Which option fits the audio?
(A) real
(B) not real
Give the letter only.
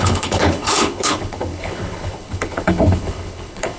B